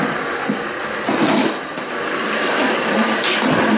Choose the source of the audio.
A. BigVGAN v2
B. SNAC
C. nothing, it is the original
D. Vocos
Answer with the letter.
A